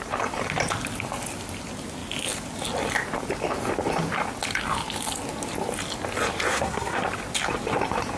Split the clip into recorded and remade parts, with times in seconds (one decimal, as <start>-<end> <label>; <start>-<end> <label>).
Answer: 0.0-6.5 recorded; 6.5-7.0 remade; 7.0-8.2 recorded